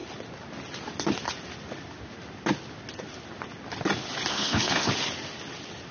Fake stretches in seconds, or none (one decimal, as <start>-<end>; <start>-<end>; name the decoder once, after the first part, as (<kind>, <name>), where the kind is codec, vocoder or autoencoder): 4.3-4.9 (codec, HILCodec)